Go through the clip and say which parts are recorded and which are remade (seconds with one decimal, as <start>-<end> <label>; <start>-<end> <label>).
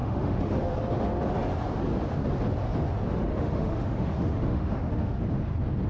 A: 0.0-0.7 remade; 0.7-3.3 recorded; 3.3-5.2 remade; 5.2-5.9 recorded